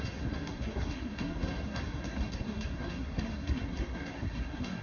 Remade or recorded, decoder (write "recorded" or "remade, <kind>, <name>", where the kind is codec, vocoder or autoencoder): remade, codec, SNAC